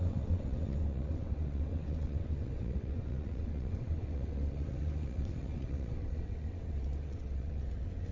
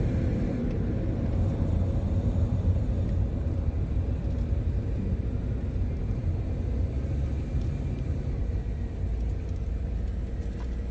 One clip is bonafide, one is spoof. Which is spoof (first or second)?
first